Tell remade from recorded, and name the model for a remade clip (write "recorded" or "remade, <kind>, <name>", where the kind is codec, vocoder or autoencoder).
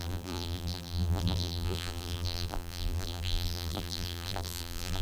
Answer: remade, vocoder, BigVGAN v2